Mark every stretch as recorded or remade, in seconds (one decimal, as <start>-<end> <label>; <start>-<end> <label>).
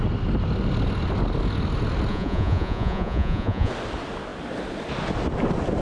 0.0-2.1 recorded; 2.1-3.7 remade; 3.7-5.8 recorded